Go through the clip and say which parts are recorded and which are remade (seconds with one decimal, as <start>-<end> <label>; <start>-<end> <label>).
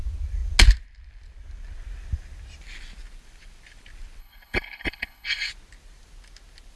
0.0-4.2 recorded; 4.2-5.5 remade; 5.5-6.8 recorded